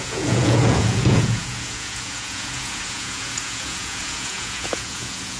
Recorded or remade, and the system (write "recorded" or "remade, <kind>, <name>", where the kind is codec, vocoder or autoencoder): remade, vocoder, Vocos